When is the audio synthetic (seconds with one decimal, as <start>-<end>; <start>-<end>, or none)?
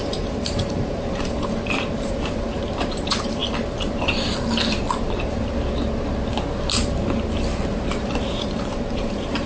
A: 0.0-3.4; 7.8-9.5